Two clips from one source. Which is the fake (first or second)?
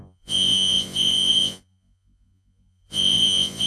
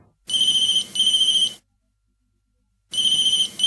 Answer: first